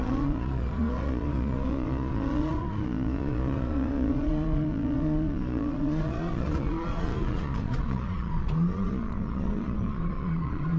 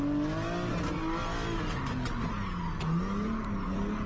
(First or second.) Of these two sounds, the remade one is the first